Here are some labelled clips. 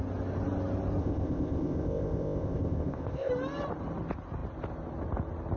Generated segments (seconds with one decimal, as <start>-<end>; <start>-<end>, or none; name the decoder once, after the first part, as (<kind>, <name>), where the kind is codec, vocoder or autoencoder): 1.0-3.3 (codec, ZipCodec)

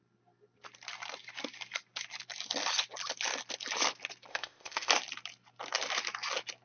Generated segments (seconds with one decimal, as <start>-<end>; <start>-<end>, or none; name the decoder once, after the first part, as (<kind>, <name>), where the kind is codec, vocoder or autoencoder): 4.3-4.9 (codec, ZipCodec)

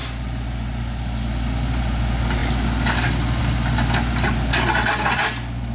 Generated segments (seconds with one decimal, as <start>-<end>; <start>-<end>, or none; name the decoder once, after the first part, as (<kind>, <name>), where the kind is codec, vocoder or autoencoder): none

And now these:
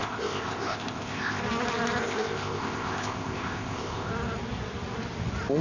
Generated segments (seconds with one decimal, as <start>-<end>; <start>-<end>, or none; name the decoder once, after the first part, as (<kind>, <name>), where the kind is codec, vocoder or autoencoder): 0.0-1.4 (codec, ZipCodec); 2.0-4.1

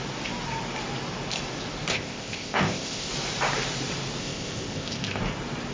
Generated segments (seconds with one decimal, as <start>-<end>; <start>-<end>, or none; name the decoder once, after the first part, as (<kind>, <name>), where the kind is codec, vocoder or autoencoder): 1.9-3.1 (codec, ZipCodec); 4.2-5.2

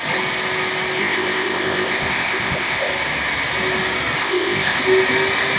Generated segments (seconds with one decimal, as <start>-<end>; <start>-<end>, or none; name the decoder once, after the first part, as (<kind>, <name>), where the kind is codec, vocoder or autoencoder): 1.0-2.9 (codec, ZipCodec); 4.2-4.8